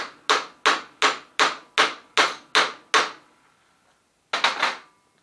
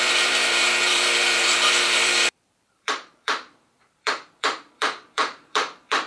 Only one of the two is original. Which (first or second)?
first